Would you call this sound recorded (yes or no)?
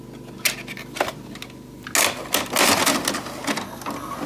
yes